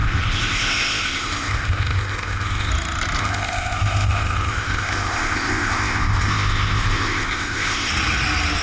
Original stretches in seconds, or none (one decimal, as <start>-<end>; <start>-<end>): 2.7-3.2; 7.9-8.6